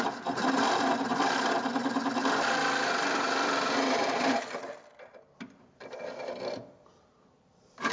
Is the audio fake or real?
fake